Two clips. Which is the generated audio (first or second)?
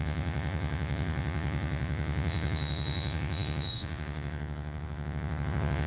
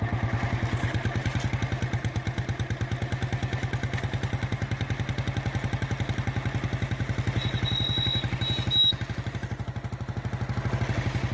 first